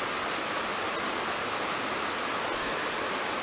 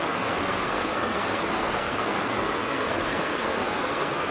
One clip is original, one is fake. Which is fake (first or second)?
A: second